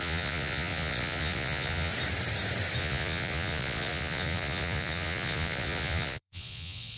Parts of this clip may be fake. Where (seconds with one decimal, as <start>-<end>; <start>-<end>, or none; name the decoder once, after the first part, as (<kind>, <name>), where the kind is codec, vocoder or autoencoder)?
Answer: 0.0-1.9 (vocoder, Vocos); 2.8-7.0